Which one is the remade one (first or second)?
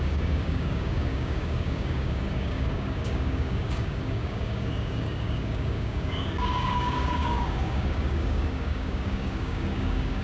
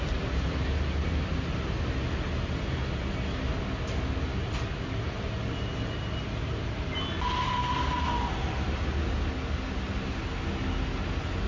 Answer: first